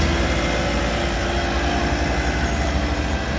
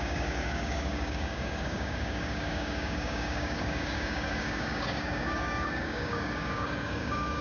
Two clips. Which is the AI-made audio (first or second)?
second